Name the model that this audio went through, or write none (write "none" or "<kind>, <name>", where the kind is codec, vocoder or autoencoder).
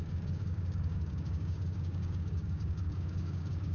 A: codec, DAC